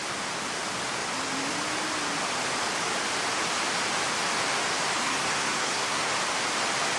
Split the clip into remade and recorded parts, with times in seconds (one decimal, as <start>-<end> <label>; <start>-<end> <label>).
0.0-5.0 recorded; 5.0-6.1 remade; 6.1-7.0 recorded